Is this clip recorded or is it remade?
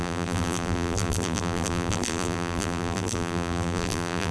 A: remade